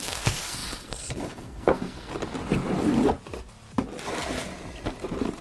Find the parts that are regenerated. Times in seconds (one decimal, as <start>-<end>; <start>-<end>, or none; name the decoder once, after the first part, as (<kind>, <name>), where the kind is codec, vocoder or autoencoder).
0.0-2.1 (codec, SNAC)